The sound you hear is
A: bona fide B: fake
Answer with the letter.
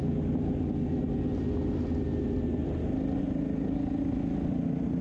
A